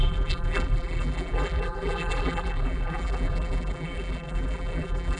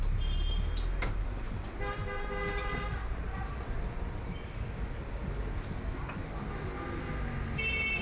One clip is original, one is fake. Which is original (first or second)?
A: second